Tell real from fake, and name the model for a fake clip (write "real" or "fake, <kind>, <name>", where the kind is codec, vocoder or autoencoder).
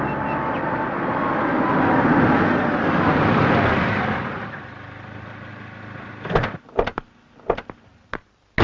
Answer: real